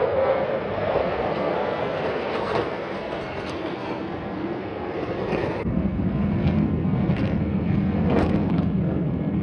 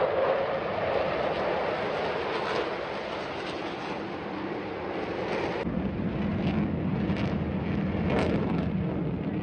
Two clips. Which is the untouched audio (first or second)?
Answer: second